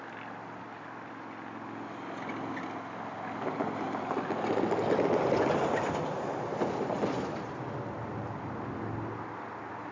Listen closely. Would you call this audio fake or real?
real